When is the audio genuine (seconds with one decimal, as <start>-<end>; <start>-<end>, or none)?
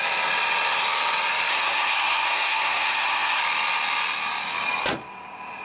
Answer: 0.0-1.5; 3.4-5.6